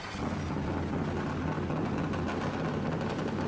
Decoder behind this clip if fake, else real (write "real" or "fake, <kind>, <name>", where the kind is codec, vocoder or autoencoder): real